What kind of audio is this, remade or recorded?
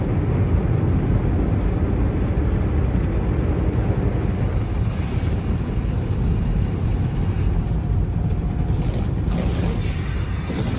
recorded